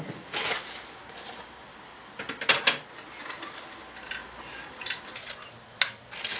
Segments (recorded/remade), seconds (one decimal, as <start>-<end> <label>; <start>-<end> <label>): 0.0-6.4 recorded